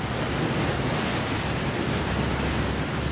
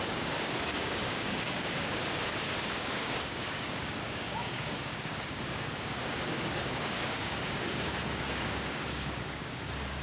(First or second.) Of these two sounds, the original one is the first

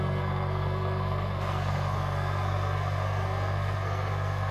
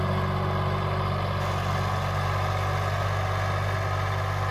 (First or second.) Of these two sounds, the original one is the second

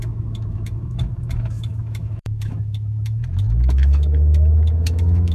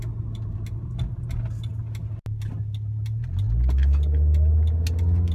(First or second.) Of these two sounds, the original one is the second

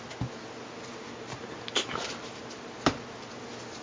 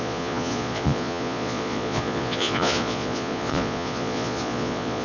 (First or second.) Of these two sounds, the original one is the first